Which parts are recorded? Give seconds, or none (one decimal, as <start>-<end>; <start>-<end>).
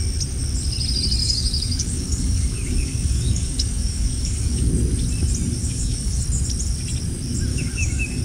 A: 0.0-1.2; 4.7-5.6; 6.2-7.5